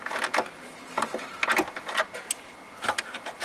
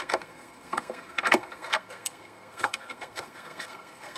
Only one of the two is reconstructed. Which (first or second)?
second